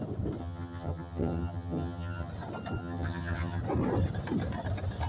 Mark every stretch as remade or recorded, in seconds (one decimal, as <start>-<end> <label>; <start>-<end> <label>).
0.0-0.4 recorded; 0.4-2.3 remade; 2.3-2.8 recorded; 2.8-3.6 remade; 3.6-5.1 recorded